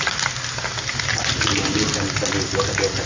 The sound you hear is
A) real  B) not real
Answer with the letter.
A